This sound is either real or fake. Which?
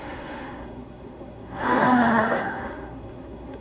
fake